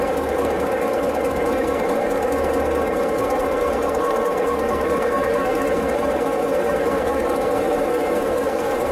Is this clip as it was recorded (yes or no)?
no